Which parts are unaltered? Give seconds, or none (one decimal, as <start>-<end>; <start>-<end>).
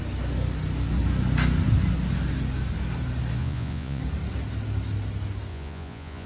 0.0-3.4; 4.0-5.5